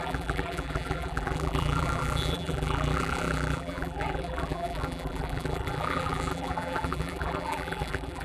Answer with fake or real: fake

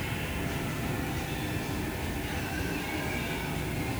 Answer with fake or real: real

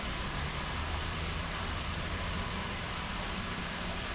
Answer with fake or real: fake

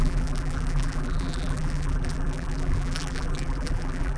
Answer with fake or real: fake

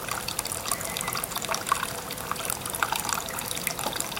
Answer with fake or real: real